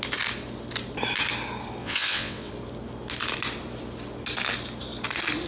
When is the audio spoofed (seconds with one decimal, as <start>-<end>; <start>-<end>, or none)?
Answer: 1.8-2.5

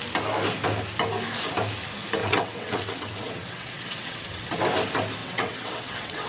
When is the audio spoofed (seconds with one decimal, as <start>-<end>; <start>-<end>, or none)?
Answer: 2.2-4.6; 5.2-6.3